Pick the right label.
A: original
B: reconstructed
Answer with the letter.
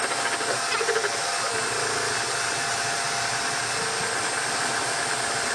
A